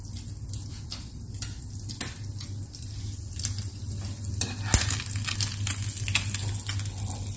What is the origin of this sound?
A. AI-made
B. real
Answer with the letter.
B